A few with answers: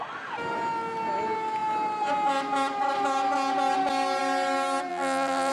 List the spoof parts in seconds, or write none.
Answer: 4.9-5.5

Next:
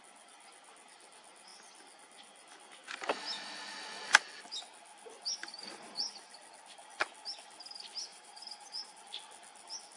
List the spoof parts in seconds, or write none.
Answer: 5.4-6.1; 8.1-9.0

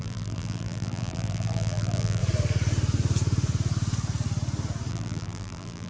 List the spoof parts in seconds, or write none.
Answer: 0.0-2.2; 4.9-5.9

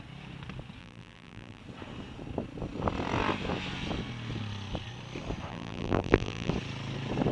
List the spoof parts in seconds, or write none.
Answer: 0.8-1.6; 5.5-6.5

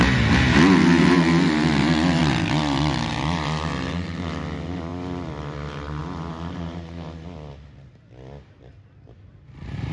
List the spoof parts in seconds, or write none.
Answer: none

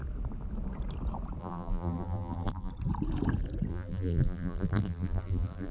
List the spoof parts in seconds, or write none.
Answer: 1.4-2.7; 3.7-5.7

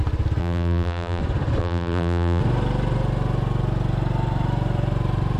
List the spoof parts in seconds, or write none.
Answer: 0.4-1.2; 1.6-2.4

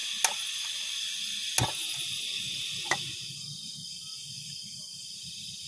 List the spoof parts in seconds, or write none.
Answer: none